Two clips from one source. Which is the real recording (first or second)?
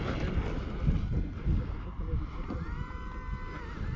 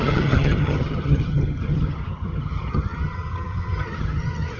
first